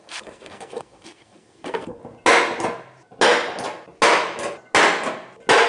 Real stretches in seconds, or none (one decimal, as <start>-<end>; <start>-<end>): 2.0-5.7